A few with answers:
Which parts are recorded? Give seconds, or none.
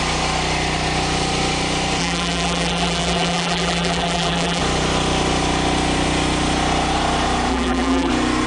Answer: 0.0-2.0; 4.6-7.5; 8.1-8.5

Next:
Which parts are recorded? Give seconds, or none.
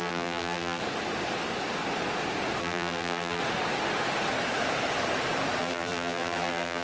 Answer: 0.8-2.6; 3.4-5.6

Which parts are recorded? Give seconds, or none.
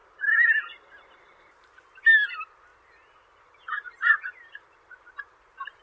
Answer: 0.6-2.7; 5.1-5.8